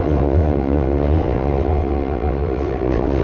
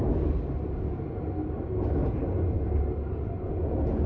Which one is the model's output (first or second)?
first